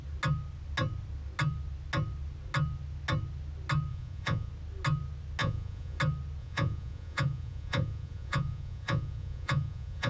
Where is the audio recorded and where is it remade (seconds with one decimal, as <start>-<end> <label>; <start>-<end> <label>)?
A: 0.0-3.9 recorded; 3.9-4.5 remade; 4.5-5.4 recorded; 5.4-6.0 remade; 6.0-6.4 recorded; 6.4-10.1 remade